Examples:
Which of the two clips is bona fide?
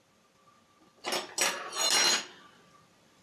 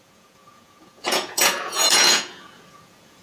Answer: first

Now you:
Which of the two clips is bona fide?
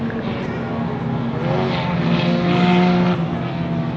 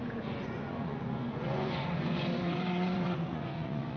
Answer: first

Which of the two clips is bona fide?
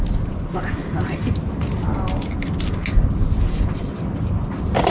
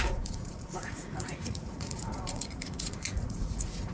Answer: first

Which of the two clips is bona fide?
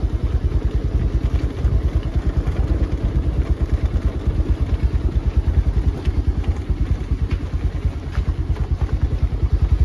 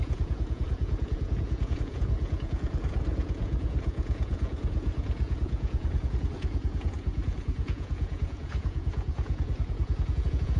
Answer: first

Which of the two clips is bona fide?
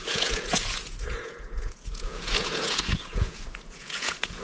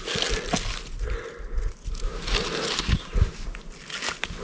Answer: second